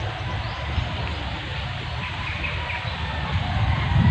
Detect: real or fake real